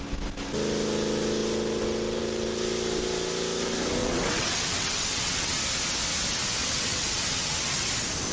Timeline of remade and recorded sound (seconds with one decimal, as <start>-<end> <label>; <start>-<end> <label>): 0.0-4.0 recorded; 4.0-5.6 remade; 5.6-6.6 recorded; 6.6-7.9 remade; 7.9-8.3 recorded

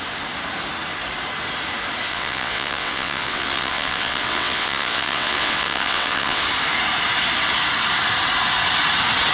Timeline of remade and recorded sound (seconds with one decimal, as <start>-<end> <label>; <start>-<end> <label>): 0.0-2.1 recorded; 2.1-6.4 remade; 6.4-9.3 recorded